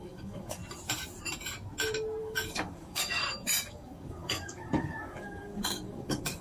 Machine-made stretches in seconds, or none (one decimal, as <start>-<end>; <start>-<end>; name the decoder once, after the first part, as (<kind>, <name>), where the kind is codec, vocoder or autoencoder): 0.0-0.6 (codec, DAC); 2.2-3.2; 3.7-6.4